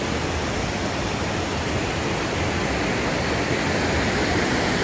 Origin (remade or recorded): remade